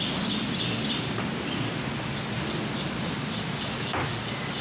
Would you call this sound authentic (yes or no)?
yes